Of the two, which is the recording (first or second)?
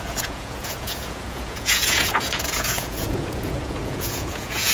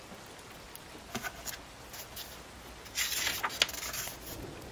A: second